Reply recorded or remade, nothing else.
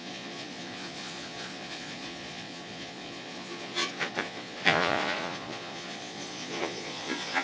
remade